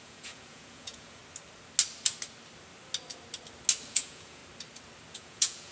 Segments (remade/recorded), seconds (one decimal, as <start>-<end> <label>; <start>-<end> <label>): 0.0-1.2 remade; 1.2-3.9 recorded; 3.9-4.4 remade; 4.4-5.1 recorded; 5.1-5.7 remade